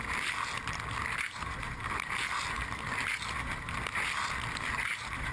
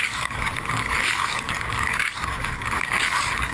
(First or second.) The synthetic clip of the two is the second